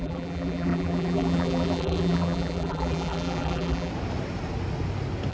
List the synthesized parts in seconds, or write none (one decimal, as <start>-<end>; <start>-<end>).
0.0-3.9